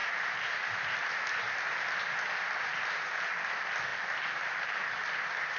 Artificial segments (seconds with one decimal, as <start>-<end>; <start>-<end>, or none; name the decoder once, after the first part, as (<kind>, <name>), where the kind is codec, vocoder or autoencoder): none